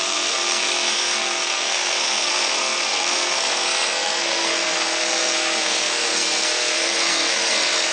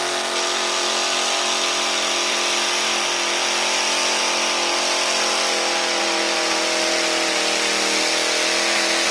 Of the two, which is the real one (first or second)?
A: second